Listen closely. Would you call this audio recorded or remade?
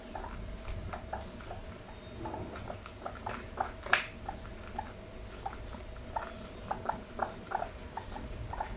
recorded